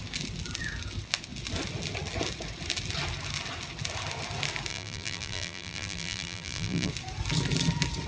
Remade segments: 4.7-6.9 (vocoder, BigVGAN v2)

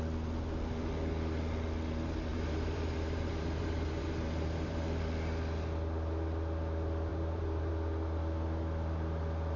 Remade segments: 2.3-5.0 (vocoder, BigVGAN v2); 7.1-7.7